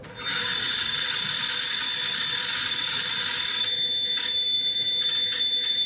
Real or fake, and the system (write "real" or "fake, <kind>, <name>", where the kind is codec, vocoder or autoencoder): real